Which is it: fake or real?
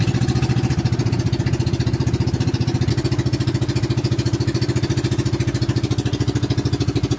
real